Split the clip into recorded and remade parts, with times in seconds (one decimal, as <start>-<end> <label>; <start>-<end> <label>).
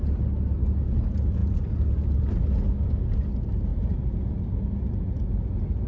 0.0-1.4 recorded; 1.4-2.2 remade; 2.2-5.9 recorded